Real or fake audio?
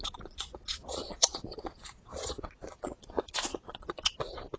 fake